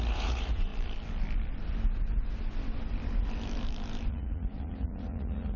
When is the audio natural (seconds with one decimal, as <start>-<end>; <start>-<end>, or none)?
0.7-4.1